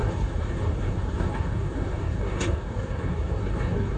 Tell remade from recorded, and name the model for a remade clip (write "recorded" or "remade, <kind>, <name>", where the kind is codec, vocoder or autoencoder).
remade, codec, SNAC